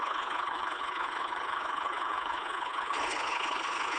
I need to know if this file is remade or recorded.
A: remade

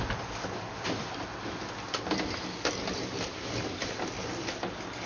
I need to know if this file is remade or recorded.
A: recorded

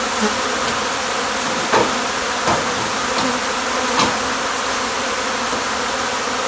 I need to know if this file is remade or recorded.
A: recorded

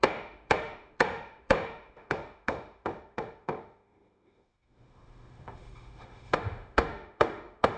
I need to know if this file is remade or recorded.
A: remade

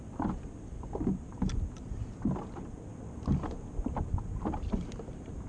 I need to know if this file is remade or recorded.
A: recorded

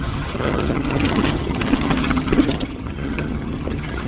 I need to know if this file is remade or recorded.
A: remade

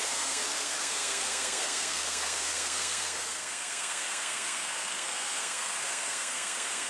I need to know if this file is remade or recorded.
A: remade